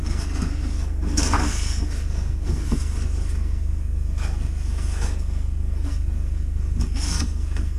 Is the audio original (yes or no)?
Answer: no